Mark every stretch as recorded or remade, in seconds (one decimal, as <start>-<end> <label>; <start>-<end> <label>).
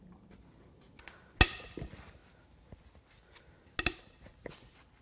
0.0-5.0 recorded